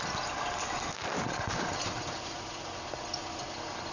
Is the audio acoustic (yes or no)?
yes